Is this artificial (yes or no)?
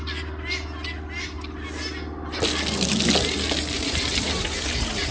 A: no